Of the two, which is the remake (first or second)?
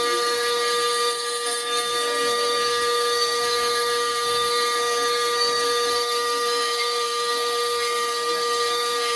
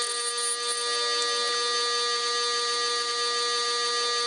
first